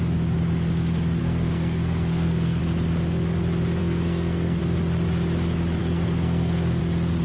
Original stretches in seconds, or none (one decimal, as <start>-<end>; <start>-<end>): 0.0-1.2; 2.6-3.8; 4.6-5.8; 6.8-7.2